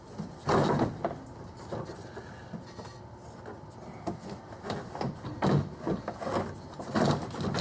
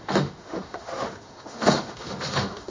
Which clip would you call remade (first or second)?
second